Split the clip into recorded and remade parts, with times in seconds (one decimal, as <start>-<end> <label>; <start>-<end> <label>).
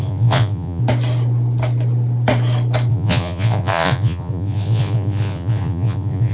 0.0-0.8 remade; 0.8-2.9 recorded; 2.9-6.3 remade